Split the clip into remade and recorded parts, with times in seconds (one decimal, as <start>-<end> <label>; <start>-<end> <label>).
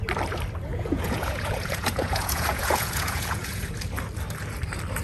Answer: 0.0-0.7 recorded; 0.7-3.7 remade; 3.7-5.0 recorded